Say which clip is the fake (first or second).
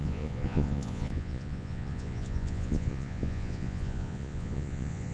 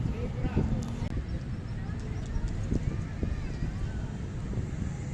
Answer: first